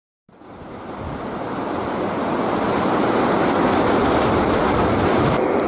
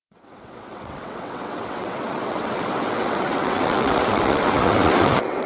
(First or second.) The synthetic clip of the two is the second